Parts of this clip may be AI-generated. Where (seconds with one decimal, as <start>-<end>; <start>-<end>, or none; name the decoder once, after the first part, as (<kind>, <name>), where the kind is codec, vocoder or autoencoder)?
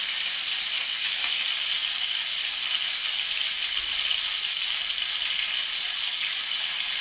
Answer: none